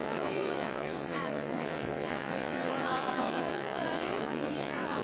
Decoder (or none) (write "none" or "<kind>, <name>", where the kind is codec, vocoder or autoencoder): vocoder, WaveNeXt